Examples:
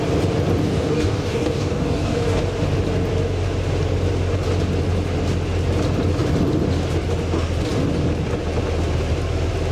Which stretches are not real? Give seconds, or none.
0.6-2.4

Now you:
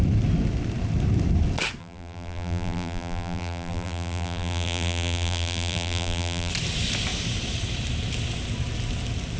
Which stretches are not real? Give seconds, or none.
1.8-6.5